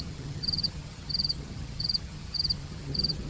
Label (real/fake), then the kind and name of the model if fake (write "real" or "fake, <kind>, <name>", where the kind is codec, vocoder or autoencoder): fake, vocoder, HiFi-GAN